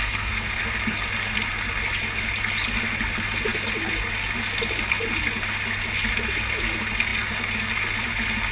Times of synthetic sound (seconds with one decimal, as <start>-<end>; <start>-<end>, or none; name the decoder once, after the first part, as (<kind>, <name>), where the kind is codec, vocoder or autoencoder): 0.0-0.6 (codec, SNAC)